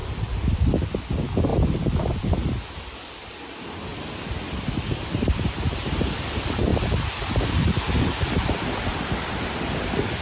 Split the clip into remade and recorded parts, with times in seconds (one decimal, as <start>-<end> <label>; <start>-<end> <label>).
0.0-0.8 remade; 0.8-1.5 recorded; 1.5-2.2 remade; 2.2-3.9 recorded; 3.9-5.4 remade; 5.4-6.7 recorded; 6.7-10.2 remade

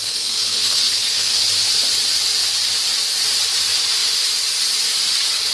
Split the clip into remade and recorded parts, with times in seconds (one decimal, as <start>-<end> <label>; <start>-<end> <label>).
0.0-1.4 remade; 1.4-5.5 recorded

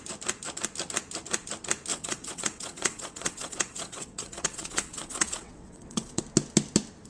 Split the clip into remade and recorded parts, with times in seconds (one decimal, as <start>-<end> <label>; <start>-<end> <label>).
0.0-1.9 recorded; 1.9-6.2 remade; 6.2-7.1 recorded

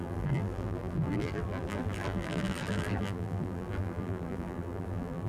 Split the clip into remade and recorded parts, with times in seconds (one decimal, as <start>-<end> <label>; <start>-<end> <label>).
0.0-5.3 remade

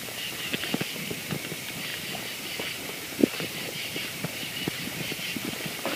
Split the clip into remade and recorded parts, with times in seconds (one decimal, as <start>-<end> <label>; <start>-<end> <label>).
0.0-3.2 recorded; 3.2-5.6 remade; 5.6-6.0 recorded

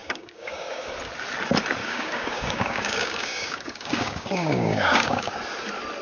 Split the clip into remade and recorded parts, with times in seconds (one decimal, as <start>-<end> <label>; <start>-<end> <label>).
0.0-0.9 remade; 0.9-1.8 recorded; 1.8-5.4 remade; 5.4-6.0 recorded

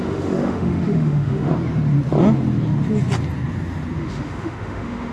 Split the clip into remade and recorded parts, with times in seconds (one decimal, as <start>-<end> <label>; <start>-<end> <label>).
0.0-1.5 remade; 1.5-4.0 recorded; 4.0-5.1 remade